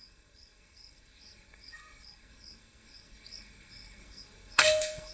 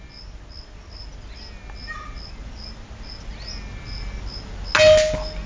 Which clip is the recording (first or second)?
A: second